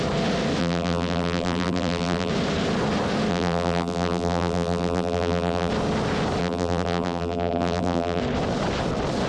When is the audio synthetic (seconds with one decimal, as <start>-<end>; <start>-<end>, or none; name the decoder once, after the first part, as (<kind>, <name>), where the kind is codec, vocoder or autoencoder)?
0.6-2.3 (vocoder, BigVGAN v2); 3.3-5.7; 6.4-8.2

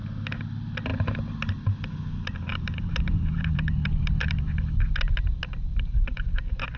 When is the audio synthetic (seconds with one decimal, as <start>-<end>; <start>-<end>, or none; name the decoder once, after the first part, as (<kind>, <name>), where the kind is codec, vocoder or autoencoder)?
2.5-4.9 (vocoder, BigVGAN v2); 5.7-6.2